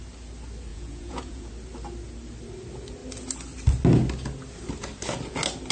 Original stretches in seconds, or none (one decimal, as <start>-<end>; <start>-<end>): 0.0-0.7; 1.5-5.7